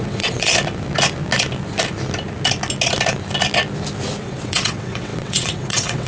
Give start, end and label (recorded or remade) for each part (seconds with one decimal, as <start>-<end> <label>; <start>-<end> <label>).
0.0-0.5 remade; 0.5-4.2 recorded; 4.2-6.1 remade